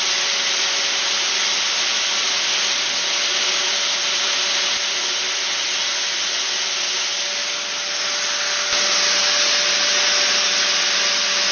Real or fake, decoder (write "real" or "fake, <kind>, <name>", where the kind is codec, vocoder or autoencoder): real